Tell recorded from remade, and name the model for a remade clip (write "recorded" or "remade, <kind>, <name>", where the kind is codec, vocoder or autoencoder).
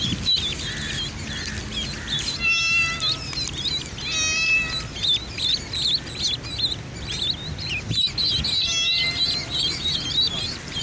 recorded